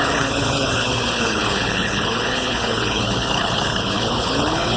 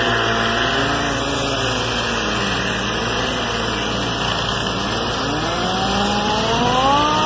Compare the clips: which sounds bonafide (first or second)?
second